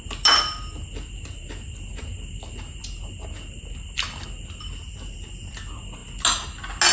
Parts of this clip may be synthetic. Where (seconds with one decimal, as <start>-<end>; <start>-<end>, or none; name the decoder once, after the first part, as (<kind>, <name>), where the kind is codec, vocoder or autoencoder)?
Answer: none